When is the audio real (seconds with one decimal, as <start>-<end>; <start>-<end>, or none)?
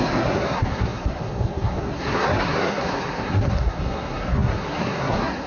none